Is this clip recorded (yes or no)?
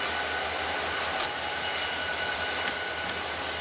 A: yes